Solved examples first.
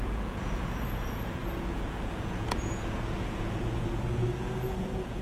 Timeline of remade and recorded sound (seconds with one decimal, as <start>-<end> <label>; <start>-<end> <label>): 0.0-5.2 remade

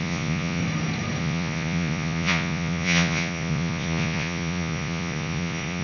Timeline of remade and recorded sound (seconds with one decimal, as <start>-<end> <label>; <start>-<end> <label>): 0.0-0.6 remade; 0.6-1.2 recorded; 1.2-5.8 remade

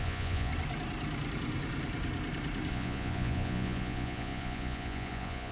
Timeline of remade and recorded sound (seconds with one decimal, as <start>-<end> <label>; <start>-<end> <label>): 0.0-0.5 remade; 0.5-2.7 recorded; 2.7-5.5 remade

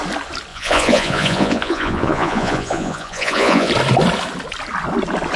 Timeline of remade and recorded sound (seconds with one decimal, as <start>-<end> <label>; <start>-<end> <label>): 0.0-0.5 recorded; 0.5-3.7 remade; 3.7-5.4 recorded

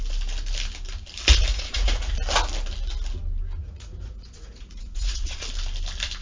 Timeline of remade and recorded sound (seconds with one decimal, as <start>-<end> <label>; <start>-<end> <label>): 0.0-1.5 recorded; 1.5-2.1 remade; 2.1-3.6 recorded; 3.6-5.4 remade; 5.4-6.2 recorded

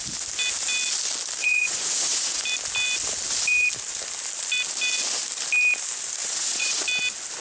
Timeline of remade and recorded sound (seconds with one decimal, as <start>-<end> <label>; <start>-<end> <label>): 0.0-1.4 recorded; 1.4-2.4 remade; 2.4-6.2 recorded; 6.2-6.8 remade; 6.8-7.4 recorded